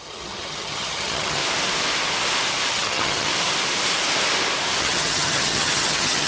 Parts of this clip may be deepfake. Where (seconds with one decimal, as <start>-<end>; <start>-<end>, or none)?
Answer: 0.0-1.4; 2.7-3.3; 4.8-6.3